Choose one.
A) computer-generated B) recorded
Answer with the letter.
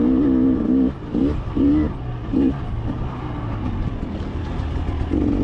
B